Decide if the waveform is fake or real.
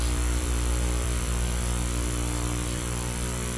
fake